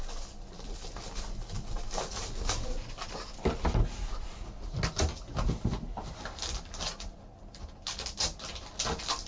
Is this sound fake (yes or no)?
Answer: no